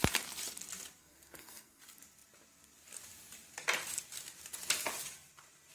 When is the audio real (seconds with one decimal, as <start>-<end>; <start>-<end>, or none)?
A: 0.0-1.0; 1.8-5.7